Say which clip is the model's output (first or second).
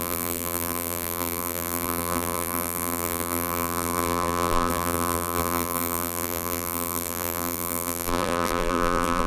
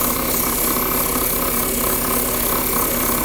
first